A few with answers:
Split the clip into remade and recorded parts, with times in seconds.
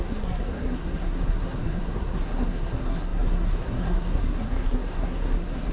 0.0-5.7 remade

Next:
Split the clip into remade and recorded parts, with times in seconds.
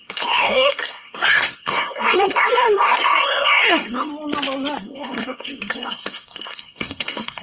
0.0-4.1 remade; 4.1-4.8 recorded; 4.8-7.4 remade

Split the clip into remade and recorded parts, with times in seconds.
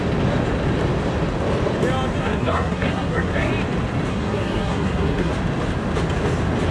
0.0-2.2 recorded; 2.2-3.5 remade; 3.5-4.1 recorded; 4.1-5.3 remade; 5.3-6.7 recorded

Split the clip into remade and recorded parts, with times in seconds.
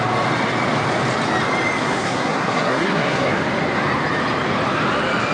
0.0-1.8 recorded; 1.8-3.4 remade; 3.4-5.3 recorded